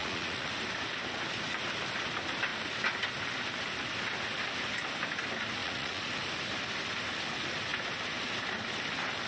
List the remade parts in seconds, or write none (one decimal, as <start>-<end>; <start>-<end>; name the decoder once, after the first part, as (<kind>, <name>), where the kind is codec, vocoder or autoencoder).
0.0-0.5 (vocoder, Vocos); 5.6-6.1